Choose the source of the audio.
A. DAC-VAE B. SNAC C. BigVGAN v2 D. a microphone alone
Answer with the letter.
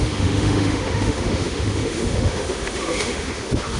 A